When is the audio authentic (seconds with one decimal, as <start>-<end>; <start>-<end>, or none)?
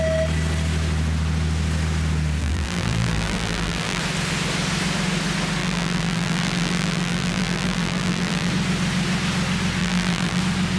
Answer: 0.0-2.4; 4.0-5.6; 8.5-9.8; 10.4-10.8